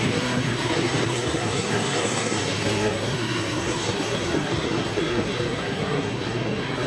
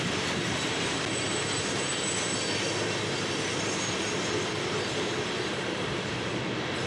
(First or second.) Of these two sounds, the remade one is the first